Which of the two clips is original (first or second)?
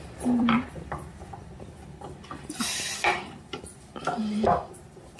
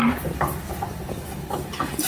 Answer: second